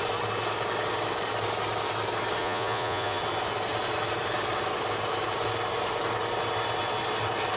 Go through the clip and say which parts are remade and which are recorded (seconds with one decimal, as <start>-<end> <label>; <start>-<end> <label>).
0.0-2.4 recorded; 2.4-3.2 remade; 3.2-7.6 recorded